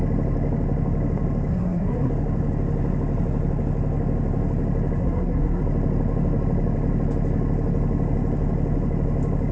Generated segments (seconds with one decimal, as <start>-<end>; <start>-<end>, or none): 1.5-2.1; 5.0-5.6